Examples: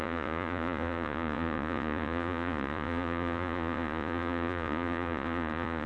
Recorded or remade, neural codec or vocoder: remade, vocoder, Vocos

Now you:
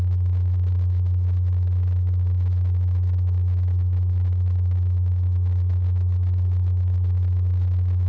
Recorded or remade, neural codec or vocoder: recorded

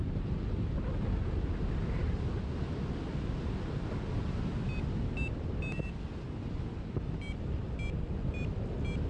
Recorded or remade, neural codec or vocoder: recorded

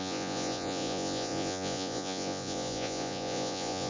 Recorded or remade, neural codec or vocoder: remade, vocoder, Vocos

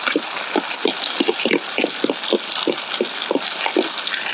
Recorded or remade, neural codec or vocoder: recorded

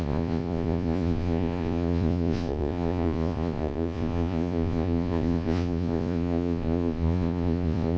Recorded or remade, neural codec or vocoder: remade, vocoder, Vocos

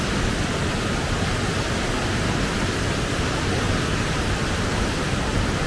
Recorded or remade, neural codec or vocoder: recorded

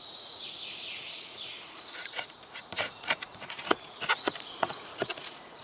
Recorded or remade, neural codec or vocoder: remade, vocoder, Vocos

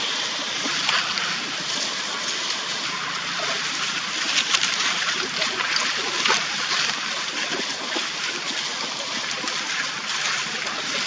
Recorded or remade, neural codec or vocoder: recorded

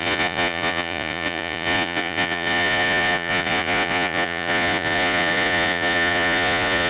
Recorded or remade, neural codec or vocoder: remade, vocoder, Vocos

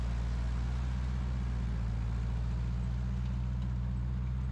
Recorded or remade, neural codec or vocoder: recorded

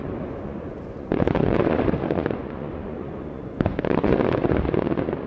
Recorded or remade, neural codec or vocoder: remade, vocoder, Vocos